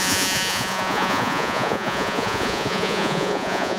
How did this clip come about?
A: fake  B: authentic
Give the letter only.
A